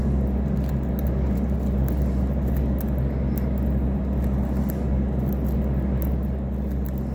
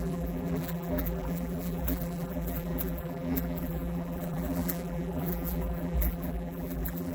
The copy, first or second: second